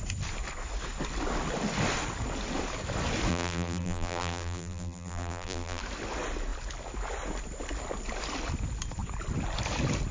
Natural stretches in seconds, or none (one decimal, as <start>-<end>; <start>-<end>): 0.0-3.3; 5.8-10.1